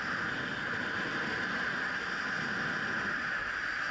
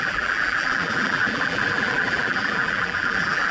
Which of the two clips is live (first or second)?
first